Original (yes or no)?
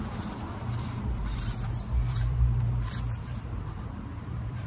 no